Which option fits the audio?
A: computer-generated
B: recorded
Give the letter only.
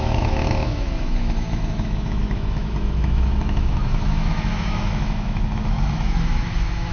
A